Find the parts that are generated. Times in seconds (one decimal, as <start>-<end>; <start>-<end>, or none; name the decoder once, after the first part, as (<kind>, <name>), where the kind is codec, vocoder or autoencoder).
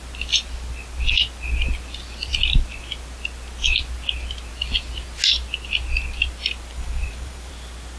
6.7-7.5 (vocoder, BigVGAN v2)